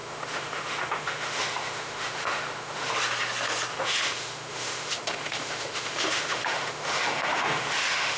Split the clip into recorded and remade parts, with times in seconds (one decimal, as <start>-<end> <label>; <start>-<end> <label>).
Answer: 0.0-2.9 remade; 2.9-3.7 recorded; 3.7-8.2 remade